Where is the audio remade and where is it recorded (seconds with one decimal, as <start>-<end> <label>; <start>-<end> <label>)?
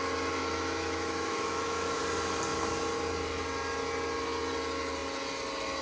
0.0-0.4 recorded; 0.4-2.0 remade; 2.0-5.8 recorded